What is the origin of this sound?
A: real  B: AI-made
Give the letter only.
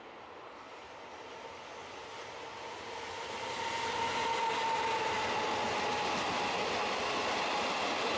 A